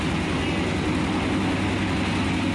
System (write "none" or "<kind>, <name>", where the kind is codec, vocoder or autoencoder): none